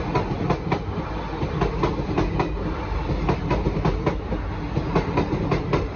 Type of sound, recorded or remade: recorded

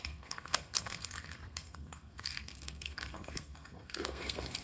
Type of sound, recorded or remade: remade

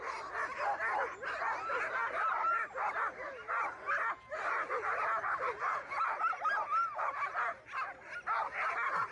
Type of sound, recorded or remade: recorded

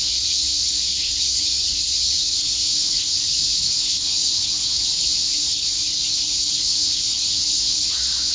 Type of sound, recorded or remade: remade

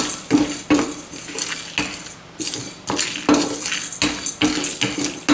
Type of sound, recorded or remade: recorded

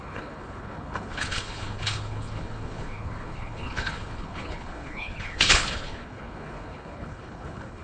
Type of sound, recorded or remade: remade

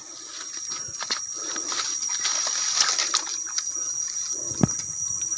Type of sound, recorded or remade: recorded